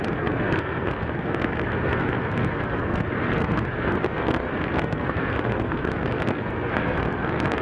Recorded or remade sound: remade